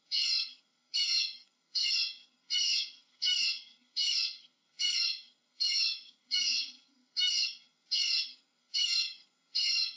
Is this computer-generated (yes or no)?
yes